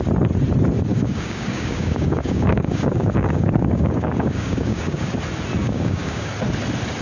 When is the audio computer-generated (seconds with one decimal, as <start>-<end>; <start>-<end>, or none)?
0.9-5.1; 5.6-6.3